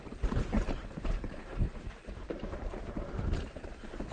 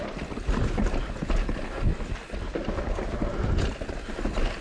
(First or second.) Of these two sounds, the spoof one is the first